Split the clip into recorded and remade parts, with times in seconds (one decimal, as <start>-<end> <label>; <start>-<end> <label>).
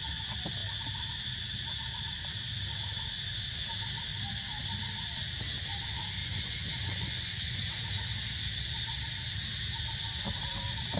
0.0-6.2 recorded; 6.2-7.7 remade; 7.7-11.0 recorded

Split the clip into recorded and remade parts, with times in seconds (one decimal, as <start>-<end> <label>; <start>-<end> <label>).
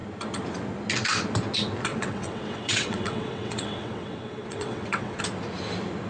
0.0-1.9 recorded; 1.9-5.2 remade; 5.2-6.1 recorded